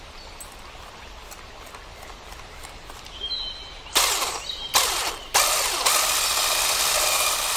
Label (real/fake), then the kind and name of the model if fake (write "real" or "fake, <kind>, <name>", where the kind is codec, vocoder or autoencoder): real